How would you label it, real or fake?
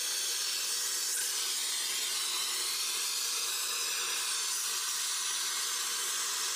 real